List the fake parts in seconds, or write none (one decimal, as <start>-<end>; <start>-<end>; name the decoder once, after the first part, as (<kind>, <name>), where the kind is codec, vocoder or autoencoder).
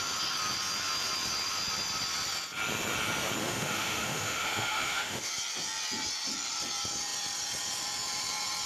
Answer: 3.4-5.3 (autoencoder, DAC-VAE)